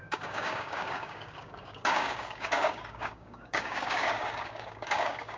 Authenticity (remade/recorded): remade